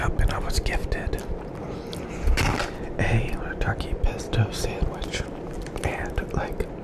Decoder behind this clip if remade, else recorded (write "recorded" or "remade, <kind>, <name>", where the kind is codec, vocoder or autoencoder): recorded